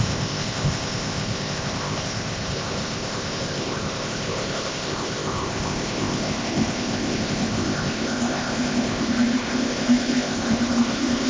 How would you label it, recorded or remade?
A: remade